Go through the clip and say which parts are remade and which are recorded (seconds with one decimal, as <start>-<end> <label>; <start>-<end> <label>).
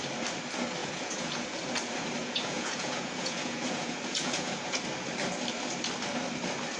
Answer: 0.0-0.8 recorded; 0.8-1.4 remade; 1.4-2.2 recorded; 2.2-4.8 remade; 4.8-6.8 recorded